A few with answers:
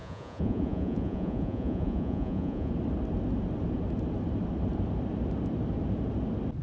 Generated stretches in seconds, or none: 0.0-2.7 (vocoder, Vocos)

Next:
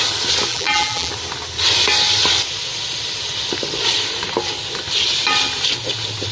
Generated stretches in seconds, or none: 0.5-1.1 (vocoder, BigVGAN v2)